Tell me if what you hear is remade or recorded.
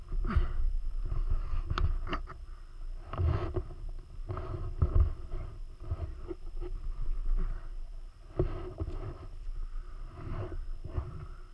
recorded